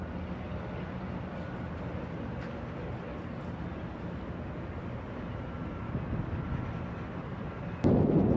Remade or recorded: recorded